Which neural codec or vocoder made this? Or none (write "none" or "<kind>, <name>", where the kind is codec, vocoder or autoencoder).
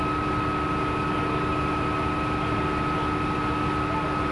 none